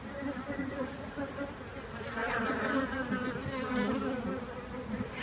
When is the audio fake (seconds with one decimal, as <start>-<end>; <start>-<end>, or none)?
0.6-1.2; 2.2-3.0

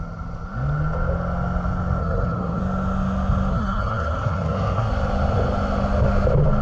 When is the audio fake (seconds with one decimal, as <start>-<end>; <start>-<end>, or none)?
2.0-2.6; 3.5-4.9

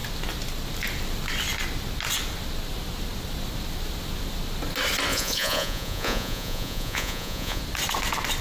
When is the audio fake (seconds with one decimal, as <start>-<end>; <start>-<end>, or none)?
5.1-7.6

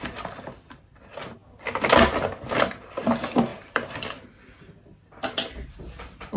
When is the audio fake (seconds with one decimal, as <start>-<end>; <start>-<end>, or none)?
0.0-1.4; 2.5-6.4

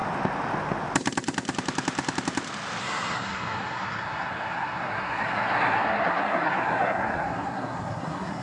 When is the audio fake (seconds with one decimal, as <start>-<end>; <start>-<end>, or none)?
2.8-8.4

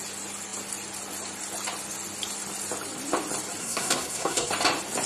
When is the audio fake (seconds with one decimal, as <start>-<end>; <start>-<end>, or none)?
3.6-4.5